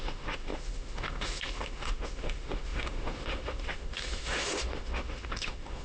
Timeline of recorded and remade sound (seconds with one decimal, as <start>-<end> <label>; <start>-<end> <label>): 0.0-5.8 remade